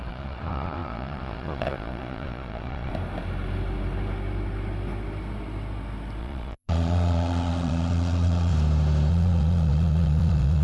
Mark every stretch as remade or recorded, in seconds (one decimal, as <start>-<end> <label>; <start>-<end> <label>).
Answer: 0.0-2.9 remade; 2.9-6.2 recorded; 6.2-8.5 remade; 8.5-9.1 recorded; 9.1-10.6 remade